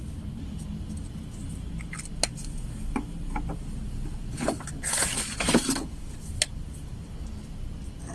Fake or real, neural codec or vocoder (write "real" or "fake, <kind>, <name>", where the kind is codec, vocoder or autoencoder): real